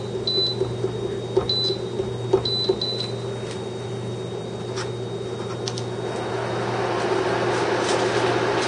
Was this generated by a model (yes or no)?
no